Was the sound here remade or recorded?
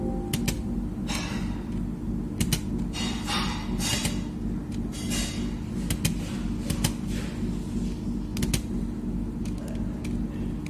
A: recorded